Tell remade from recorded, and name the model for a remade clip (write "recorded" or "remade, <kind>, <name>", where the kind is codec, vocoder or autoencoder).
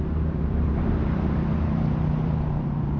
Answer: remade, vocoder, BigVGAN v2